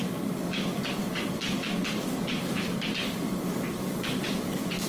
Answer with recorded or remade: remade